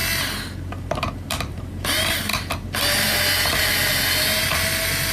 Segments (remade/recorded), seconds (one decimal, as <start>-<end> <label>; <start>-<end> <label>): 0.0-5.1 recorded